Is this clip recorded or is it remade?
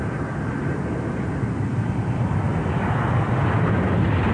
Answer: recorded